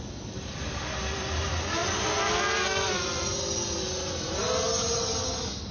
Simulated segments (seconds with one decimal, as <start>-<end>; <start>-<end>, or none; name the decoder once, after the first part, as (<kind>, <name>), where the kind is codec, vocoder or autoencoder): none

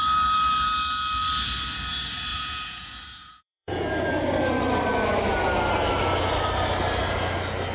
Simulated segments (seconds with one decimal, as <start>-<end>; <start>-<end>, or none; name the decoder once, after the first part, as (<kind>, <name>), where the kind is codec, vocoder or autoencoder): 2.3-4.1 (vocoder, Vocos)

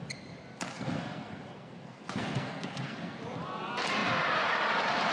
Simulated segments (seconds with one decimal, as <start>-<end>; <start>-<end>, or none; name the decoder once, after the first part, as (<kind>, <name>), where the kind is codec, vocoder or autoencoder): 0.7-3.2 (codec, SNAC)

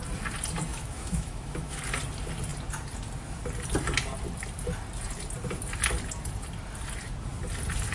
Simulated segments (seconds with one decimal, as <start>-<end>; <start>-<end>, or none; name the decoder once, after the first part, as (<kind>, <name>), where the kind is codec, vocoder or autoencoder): 0.7-1.8 (autoencoder, DAC-VAE)

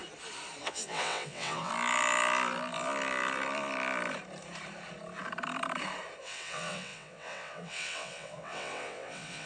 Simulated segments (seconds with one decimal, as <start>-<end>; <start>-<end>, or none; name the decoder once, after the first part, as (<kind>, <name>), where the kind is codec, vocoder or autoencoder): 0.6-1.7 (vocoder, WaveNeXt); 6.2-9.5

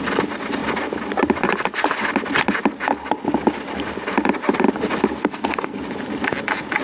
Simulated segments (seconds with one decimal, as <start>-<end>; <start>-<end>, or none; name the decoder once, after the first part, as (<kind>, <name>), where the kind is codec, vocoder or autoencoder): 5.2-5.8 (codec, SNAC)

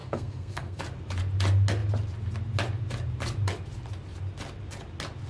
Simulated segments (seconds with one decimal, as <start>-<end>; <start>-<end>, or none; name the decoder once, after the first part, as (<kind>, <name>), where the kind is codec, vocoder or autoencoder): 0.0-0.8 (codec, SNAC)